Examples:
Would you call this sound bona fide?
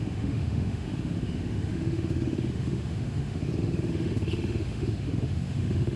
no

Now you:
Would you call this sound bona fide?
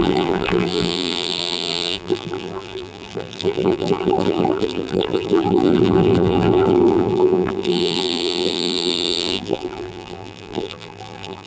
no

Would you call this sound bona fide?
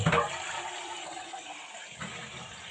yes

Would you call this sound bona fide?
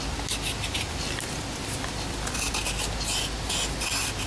yes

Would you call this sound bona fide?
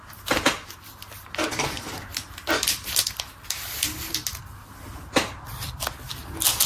yes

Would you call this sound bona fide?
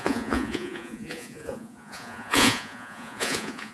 no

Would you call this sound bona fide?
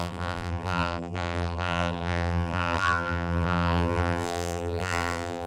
no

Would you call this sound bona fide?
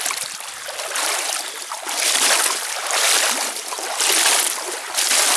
yes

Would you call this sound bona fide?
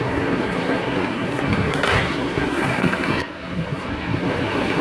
no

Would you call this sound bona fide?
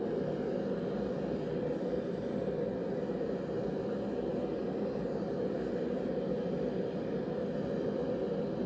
yes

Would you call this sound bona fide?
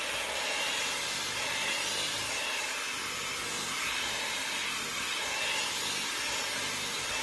yes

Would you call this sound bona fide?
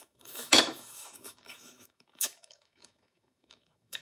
no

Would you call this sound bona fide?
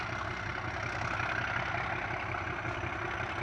yes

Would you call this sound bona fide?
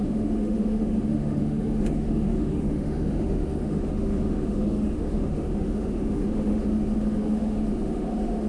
no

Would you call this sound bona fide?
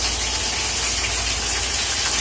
yes